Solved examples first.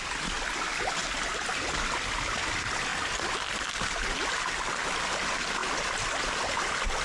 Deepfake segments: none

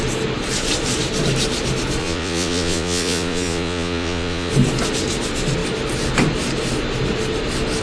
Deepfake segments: 2.0-4.5 (vocoder, Vocos)